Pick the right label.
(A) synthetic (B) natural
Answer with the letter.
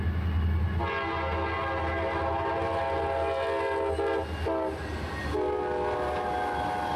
B